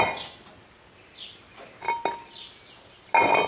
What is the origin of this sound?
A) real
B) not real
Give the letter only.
A